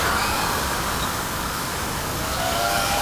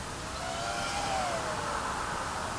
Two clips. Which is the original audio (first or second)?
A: second